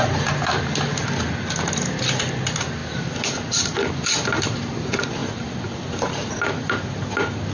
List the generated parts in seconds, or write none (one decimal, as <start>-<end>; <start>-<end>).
none